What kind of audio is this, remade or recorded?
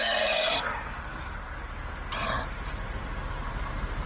recorded